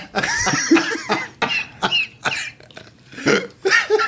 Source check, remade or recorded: recorded